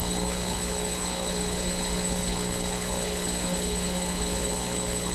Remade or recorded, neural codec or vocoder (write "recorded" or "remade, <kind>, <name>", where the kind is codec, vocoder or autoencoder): remade, codec, HILCodec